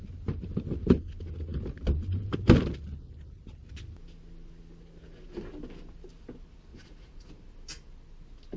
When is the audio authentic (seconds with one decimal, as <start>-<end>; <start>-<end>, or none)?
0.0-6.7; 7.3-8.6